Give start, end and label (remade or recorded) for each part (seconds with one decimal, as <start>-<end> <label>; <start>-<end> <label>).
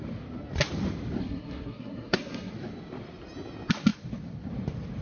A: 0.0-1.2 recorded; 1.2-2.5 remade; 2.5-5.0 recorded